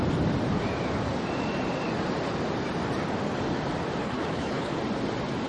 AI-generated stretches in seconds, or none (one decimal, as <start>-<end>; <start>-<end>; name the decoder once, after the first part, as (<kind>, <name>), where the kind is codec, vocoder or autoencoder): 4.0-4.8 (codec, HILCodec)